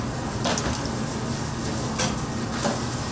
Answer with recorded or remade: recorded